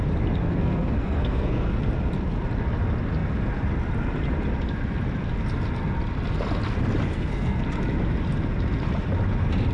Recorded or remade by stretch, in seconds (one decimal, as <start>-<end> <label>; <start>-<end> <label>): 0.0-0.5 recorded; 0.5-1.8 remade; 1.8-7.1 recorded; 7.1-7.6 remade; 7.6-9.7 recorded